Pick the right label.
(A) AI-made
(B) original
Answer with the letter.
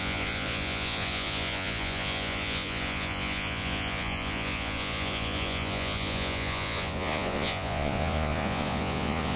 A